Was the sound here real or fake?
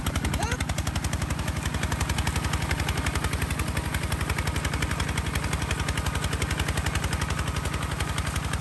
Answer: real